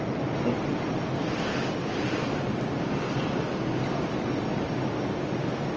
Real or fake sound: real